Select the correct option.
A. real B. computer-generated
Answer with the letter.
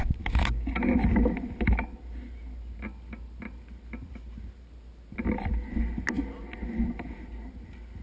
A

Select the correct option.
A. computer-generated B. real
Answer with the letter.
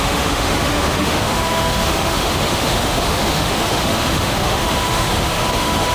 A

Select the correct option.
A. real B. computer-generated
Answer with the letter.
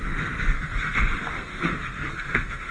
B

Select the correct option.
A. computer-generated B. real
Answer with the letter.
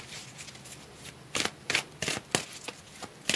B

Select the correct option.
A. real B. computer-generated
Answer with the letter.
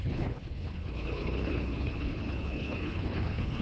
B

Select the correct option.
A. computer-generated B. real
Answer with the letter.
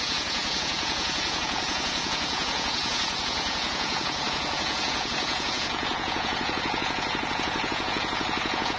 A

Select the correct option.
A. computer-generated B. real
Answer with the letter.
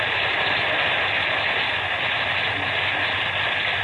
B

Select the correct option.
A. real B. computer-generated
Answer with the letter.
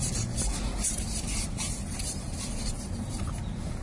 B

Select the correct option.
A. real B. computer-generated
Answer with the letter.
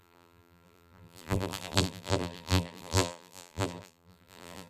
B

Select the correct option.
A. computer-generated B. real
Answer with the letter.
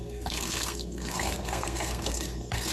A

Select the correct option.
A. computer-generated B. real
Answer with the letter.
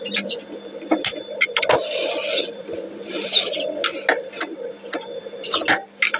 B